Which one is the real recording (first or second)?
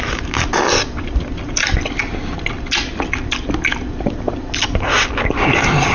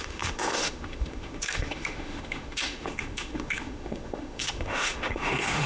first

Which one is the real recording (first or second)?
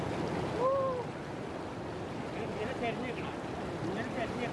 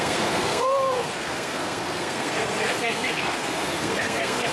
first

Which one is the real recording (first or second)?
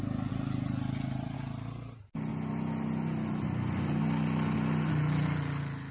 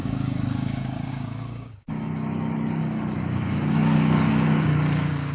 first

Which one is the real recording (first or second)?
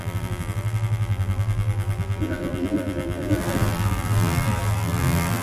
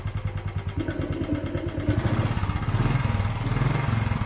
second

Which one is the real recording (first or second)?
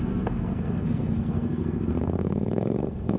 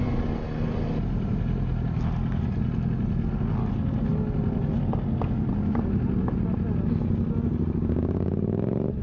second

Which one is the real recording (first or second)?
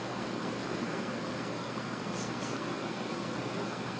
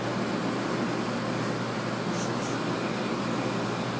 second